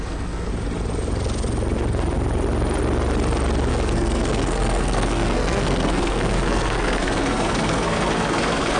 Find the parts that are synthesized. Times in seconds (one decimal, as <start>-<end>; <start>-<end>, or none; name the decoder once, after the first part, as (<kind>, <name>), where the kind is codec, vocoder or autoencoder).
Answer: 0.0-0.5 (codec, SNAC); 3.7-8.8